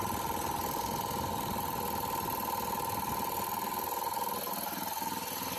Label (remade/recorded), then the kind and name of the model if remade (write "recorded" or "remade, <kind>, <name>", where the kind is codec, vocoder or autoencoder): recorded